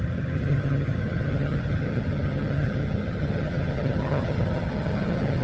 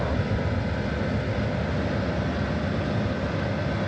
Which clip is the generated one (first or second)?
first